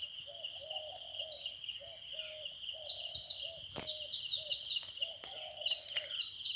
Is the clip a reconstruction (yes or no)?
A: no